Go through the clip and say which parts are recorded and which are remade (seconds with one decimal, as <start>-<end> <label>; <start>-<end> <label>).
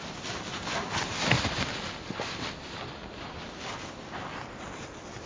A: 0.0-5.3 recorded